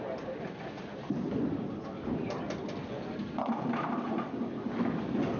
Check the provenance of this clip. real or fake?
real